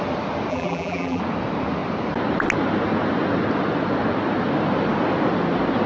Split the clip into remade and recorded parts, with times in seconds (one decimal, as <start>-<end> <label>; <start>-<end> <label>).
0.0-0.5 recorded; 0.5-1.2 remade; 1.2-5.9 recorded

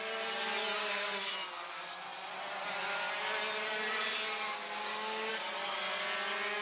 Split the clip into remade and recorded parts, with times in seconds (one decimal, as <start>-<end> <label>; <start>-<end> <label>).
0.0-0.8 recorded; 0.8-1.3 remade; 1.3-6.6 recorded

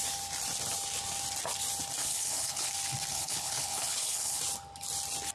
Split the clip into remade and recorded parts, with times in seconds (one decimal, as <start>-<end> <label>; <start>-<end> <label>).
0.0-2.0 recorded; 2.0-2.7 remade; 2.7-3.1 recorded; 3.1-4.4 remade; 4.4-5.3 recorded

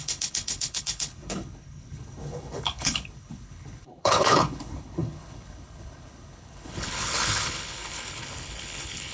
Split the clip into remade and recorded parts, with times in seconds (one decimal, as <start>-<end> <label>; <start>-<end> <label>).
0.0-9.1 remade

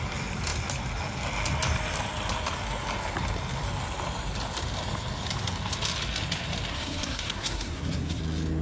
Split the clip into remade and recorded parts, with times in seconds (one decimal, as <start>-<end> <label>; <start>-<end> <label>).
0.0-6.7 recorded; 6.7-8.2 remade; 8.2-8.6 recorded

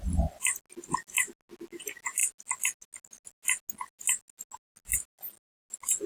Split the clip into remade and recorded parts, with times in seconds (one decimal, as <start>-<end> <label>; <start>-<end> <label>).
0.0-6.1 recorded

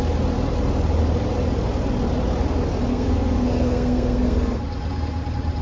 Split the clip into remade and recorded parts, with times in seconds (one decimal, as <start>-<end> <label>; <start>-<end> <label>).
0.0-2.9 recorded; 2.9-4.6 remade; 4.6-5.6 recorded

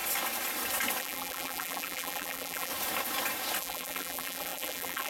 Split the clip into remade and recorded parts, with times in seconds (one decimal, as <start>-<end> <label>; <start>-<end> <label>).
0.0-1.0 recorded; 1.0-2.7 remade; 2.7-3.6 recorded; 3.6-5.1 remade